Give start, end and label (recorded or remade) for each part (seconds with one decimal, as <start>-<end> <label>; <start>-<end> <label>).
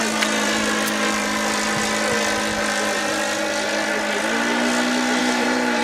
0.0-5.2 recorded; 5.2-5.8 remade